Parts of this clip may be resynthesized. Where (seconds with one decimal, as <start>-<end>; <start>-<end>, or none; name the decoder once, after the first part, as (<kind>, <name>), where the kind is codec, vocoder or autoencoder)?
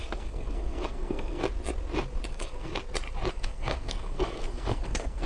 0.0-1.4 (codec, SNAC); 2.3-2.7; 3.3-5.3